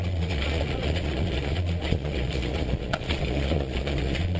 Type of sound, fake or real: fake